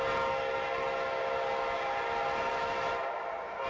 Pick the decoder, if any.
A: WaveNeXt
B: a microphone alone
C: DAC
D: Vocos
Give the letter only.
B